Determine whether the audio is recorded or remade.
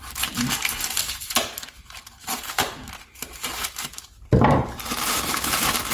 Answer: remade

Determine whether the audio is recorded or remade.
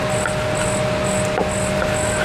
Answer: recorded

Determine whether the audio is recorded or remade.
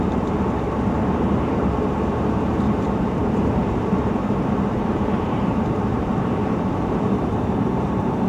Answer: remade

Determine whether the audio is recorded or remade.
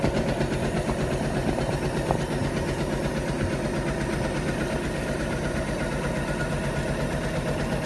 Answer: recorded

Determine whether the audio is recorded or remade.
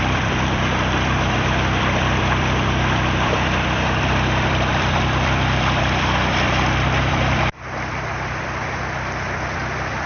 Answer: remade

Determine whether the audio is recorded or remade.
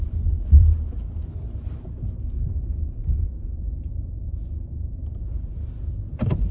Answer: remade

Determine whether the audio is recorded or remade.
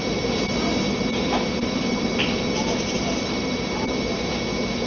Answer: recorded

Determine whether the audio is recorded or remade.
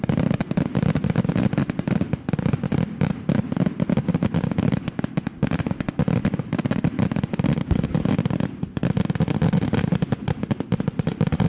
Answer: remade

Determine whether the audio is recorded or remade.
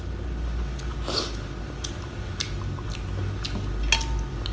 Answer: recorded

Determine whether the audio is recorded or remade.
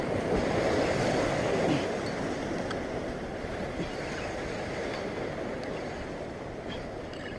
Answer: recorded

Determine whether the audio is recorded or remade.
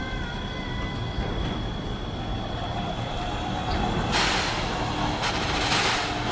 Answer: recorded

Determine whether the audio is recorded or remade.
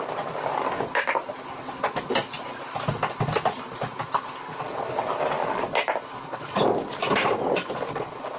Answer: recorded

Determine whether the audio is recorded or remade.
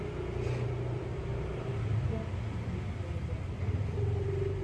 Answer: recorded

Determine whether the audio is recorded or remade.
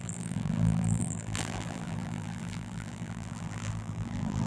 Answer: remade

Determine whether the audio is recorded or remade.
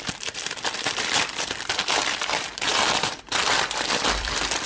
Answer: remade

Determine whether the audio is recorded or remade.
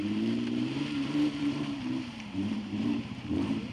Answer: remade